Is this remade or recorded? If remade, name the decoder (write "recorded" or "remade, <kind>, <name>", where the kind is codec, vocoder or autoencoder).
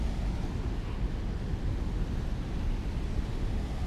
recorded